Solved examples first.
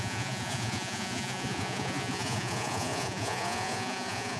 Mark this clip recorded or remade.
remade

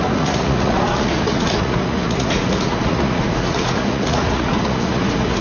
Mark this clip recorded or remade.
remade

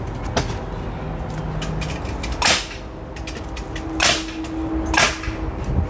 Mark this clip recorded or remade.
recorded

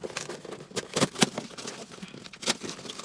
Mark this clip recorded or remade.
recorded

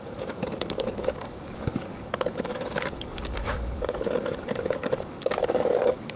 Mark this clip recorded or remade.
remade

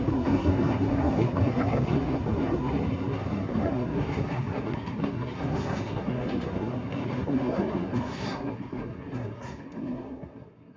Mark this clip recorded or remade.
remade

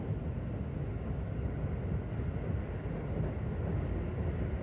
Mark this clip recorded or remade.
recorded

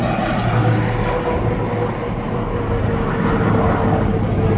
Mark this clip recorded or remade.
recorded